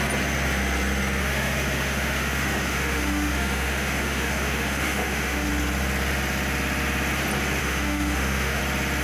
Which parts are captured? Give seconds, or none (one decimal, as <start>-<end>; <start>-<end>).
0.0-1.2; 5.5-7.6; 8.6-9.0